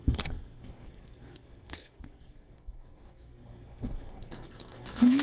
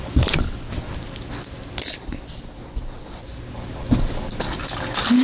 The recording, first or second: second